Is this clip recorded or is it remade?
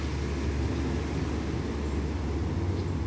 recorded